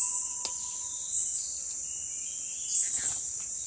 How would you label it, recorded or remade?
recorded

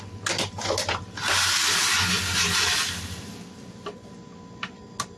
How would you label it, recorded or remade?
recorded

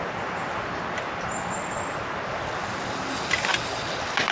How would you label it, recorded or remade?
recorded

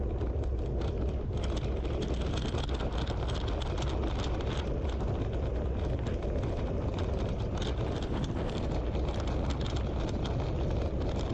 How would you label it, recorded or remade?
recorded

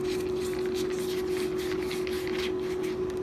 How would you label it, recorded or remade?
recorded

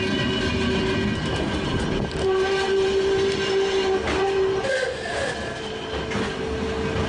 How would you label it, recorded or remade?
recorded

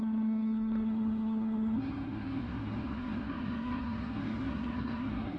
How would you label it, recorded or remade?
remade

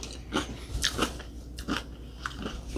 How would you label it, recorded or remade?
recorded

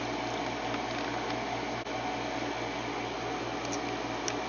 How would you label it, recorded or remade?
recorded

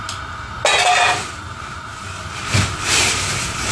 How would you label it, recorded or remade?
recorded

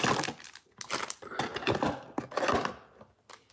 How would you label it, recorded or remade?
recorded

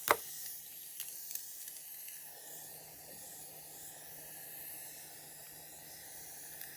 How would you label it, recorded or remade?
recorded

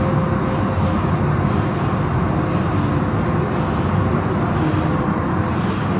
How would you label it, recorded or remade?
recorded